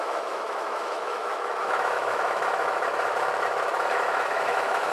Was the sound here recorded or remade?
remade